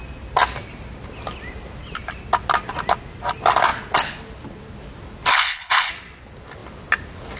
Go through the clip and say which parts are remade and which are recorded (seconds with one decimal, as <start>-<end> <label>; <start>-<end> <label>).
0.0-5.3 recorded; 5.3-5.9 remade; 5.9-7.4 recorded